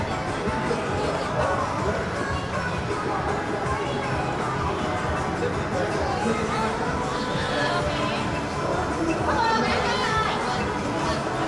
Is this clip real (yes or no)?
no